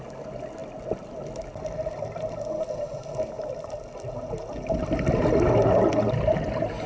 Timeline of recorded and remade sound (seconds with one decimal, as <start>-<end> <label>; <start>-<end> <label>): 0.0-6.9 recorded